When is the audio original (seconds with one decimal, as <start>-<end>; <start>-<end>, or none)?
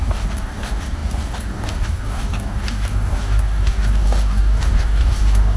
none